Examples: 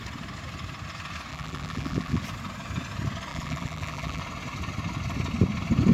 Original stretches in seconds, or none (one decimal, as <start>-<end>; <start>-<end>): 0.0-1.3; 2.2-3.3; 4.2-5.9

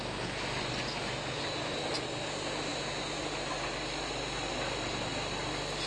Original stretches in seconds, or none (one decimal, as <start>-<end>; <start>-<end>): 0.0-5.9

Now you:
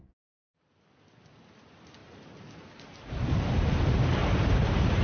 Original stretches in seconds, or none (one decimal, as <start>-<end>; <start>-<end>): 0.0-2.0

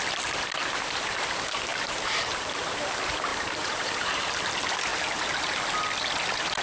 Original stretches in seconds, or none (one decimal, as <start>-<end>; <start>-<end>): 0.0-0.6; 1.1-1.7; 2.3-3.3; 4.2-4.9; 5.6-6.6

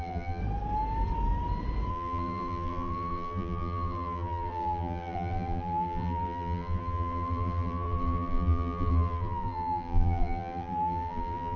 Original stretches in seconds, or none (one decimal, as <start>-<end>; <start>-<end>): 0.4-1.9

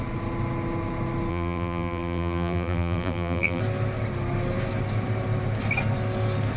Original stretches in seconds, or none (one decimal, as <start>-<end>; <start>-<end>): 0.0-1.3; 3.6-6.6

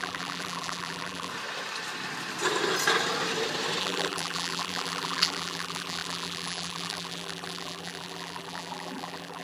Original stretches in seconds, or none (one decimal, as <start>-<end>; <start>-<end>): 1.3-3.8